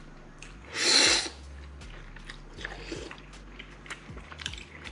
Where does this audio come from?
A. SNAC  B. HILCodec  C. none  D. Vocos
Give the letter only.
C